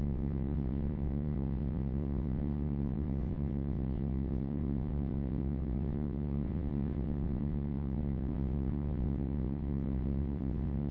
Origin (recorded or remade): remade